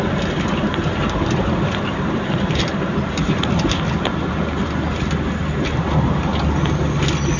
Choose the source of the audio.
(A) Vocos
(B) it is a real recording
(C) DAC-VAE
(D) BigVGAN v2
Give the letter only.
B